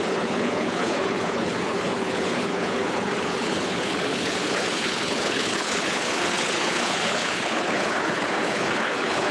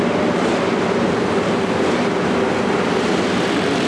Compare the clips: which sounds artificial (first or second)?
first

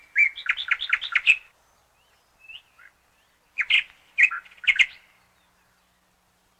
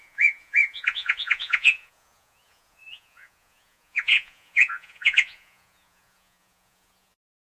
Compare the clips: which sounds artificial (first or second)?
second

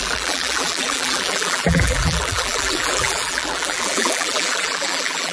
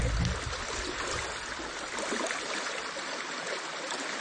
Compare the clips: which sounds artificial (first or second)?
first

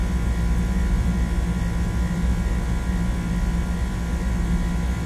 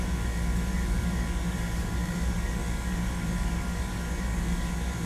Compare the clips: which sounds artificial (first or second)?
second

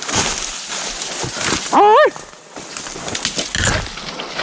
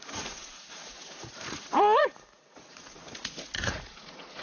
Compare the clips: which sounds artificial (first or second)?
second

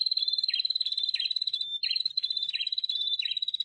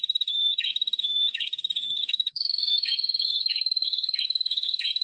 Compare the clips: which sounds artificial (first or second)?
second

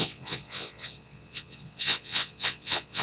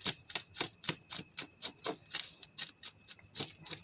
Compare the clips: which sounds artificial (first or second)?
first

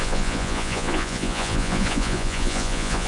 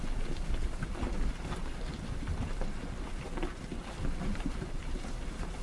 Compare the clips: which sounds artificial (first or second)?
first